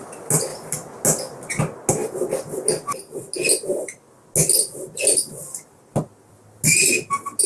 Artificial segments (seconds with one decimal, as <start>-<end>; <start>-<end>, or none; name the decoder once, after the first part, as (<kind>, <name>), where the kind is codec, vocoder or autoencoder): none